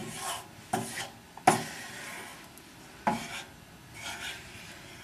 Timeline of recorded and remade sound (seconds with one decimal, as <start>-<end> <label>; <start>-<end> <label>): 0.0-5.0 recorded